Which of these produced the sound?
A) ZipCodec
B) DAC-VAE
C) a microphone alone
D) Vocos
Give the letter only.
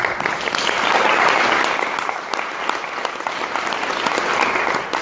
C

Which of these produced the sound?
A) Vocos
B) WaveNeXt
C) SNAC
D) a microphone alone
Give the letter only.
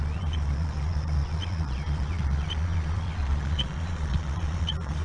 A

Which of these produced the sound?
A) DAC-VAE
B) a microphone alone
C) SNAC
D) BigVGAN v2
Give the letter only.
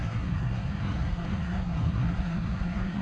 C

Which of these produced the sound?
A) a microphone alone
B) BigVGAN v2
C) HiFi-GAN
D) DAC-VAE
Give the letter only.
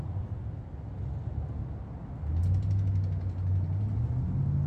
A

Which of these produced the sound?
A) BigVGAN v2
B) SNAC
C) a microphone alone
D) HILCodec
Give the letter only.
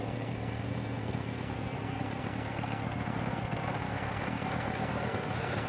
B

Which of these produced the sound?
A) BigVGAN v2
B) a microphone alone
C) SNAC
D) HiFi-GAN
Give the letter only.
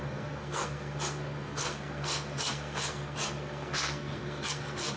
C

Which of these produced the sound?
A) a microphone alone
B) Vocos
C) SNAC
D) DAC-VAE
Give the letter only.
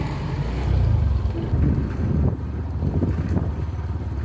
A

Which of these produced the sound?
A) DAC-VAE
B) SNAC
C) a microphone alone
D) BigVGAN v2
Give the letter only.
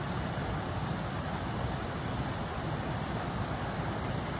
C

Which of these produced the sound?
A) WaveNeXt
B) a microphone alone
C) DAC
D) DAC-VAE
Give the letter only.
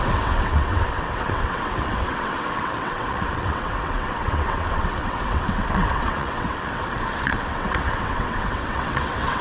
A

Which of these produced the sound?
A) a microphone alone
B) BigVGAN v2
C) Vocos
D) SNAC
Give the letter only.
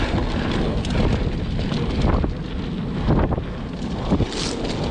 A